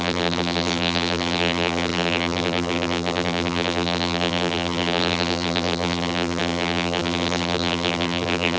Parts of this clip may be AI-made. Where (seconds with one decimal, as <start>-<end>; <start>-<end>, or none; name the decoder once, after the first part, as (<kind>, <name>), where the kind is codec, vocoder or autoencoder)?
0.0-8.6 (vocoder, BigVGAN v2)